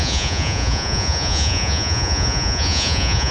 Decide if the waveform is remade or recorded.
remade